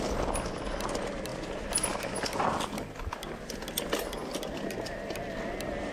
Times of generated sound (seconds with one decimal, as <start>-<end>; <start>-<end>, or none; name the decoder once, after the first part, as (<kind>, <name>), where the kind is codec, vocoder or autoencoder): none